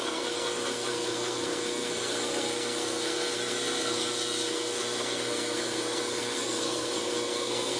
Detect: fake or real fake